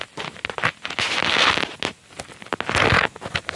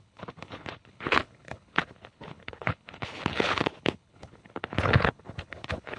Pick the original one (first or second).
first